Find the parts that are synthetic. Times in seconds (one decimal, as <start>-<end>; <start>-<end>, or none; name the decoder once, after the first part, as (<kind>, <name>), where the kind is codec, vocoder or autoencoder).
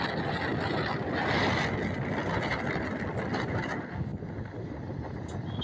none